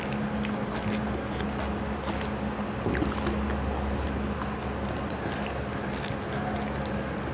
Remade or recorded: recorded